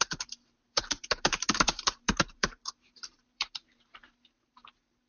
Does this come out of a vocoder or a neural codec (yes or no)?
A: yes